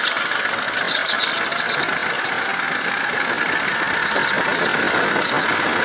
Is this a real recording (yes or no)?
yes